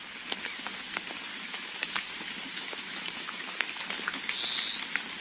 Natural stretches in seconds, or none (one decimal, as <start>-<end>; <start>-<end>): 0.0-1.3; 1.9-2.5; 3.8-5.2